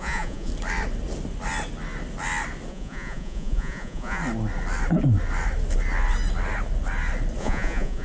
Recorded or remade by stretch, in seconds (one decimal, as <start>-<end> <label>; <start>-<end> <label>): 0.0-0.5 remade; 0.5-2.7 recorded; 2.7-4.2 remade; 4.2-7.4 recorded; 7.4-8.0 remade